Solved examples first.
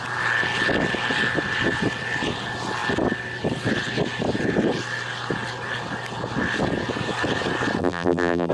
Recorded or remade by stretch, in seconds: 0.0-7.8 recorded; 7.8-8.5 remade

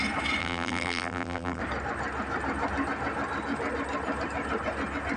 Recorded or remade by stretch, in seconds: 0.0-0.4 recorded; 0.4-1.6 remade; 1.6-5.2 recorded

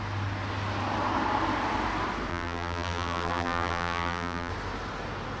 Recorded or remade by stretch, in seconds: 0.0-2.3 recorded; 2.3-4.5 remade; 4.5-5.4 recorded

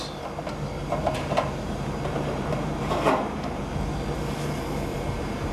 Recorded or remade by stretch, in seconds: 0.0-0.8 recorded; 0.8-3.6 remade; 3.6-4.9 recorded; 4.9-5.5 remade

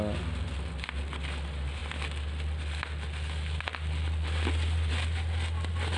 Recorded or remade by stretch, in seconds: 0.0-6.0 recorded